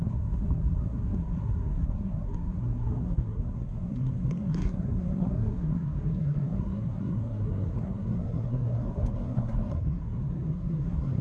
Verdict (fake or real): fake